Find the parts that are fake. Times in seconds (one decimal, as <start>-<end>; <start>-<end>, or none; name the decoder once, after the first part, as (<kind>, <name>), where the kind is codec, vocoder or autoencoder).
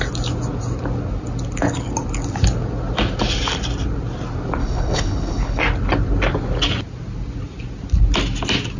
4.6-5.6 (codec, HILCodec)